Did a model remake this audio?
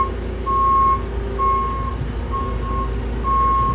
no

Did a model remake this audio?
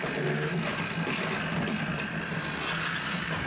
no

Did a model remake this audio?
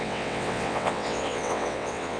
yes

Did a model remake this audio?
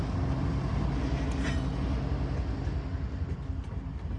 no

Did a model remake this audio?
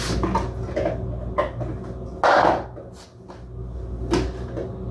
no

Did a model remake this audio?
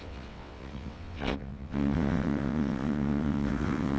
yes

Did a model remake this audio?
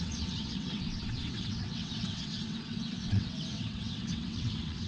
yes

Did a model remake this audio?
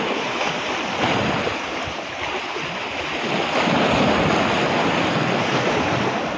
no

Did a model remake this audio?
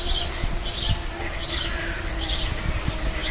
no